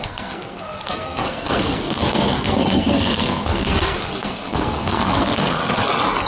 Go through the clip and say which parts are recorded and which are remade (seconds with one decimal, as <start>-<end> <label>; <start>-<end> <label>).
0.0-5.6 remade; 5.6-6.3 recorded

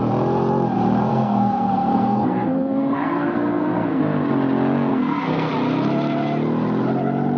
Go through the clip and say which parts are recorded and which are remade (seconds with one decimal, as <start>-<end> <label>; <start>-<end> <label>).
0.0-1.1 recorded; 1.1-4.0 remade; 4.0-4.9 recorded; 4.9-5.5 remade; 5.5-7.4 recorded

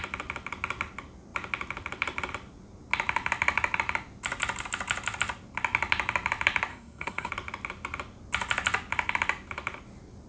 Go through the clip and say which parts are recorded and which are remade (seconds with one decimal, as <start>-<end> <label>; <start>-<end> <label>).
0.0-6.7 recorded; 6.7-7.3 remade; 7.3-10.3 recorded

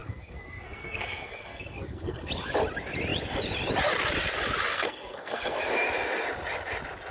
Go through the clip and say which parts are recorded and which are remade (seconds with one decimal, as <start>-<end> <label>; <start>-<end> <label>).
0.0-2.3 remade; 2.3-4.7 recorded; 4.7-5.6 remade; 5.6-7.1 recorded

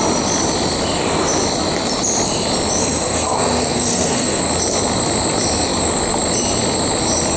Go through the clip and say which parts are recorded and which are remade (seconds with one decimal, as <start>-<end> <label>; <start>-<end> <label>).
0.0-2.8 recorded; 2.8-4.4 remade; 4.4-7.4 recorded

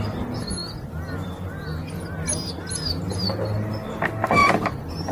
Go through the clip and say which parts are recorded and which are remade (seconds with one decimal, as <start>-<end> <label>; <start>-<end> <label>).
0.0-5.1 recorded